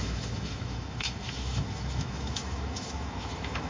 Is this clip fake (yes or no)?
yes